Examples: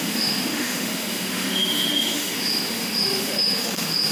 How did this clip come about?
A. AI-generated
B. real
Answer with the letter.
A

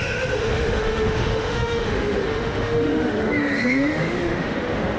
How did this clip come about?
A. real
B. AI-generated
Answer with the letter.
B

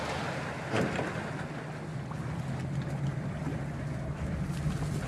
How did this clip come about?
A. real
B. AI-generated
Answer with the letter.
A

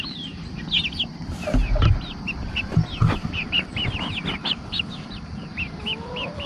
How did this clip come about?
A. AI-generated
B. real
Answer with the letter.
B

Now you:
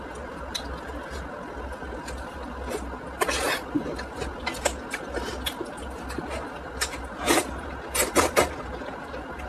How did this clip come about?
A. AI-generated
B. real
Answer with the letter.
B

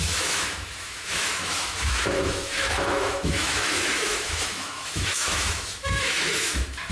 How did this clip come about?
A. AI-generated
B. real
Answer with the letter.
A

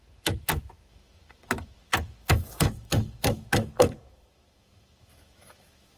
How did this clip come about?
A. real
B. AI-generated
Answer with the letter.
B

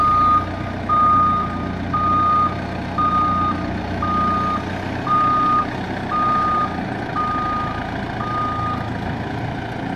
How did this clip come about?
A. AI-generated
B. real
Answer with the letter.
B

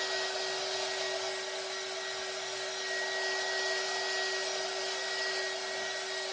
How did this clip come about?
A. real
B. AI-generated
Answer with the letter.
A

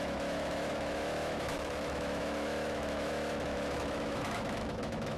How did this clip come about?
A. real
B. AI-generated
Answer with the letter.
B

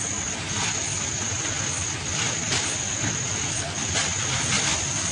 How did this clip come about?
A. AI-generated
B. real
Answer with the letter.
B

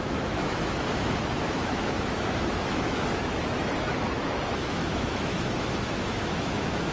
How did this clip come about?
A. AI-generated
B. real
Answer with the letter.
A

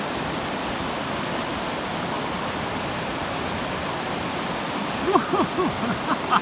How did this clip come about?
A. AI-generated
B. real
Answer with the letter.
B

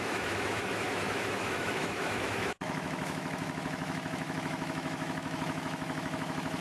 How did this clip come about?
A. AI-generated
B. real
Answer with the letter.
A